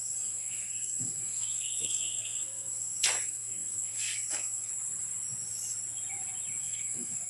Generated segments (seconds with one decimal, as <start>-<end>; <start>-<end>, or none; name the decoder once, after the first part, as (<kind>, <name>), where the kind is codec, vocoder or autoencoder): 0.0-4.7 (codec, SNAC); 6.6-7.3